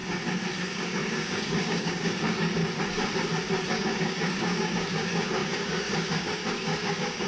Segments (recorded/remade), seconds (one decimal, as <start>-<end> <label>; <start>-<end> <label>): 0.0-0.6 recorded; 0.6-2.6 remade; 2.6-3.7 recorded; 3.7-7.3 remade